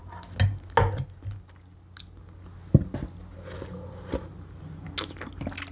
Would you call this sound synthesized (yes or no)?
no